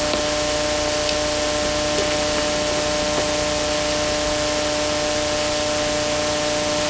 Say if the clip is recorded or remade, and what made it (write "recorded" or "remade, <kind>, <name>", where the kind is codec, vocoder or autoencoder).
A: recorded